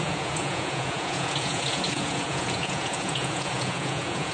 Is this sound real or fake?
fake